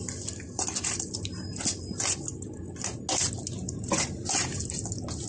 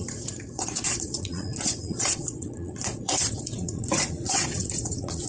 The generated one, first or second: second